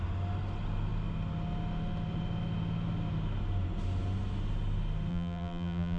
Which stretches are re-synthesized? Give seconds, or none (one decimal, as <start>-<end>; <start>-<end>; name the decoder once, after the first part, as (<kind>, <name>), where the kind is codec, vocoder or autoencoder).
5.1-6.0 (vocoder, BigVGAN v2)